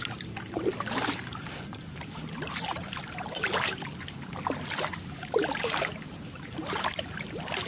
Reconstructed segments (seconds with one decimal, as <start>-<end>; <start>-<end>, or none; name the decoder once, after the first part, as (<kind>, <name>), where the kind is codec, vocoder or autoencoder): 0.0-4.3 (vocoder, BigVGAN v2); 5.0-7.7